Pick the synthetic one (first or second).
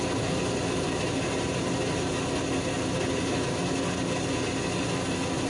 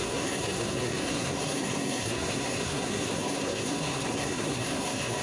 second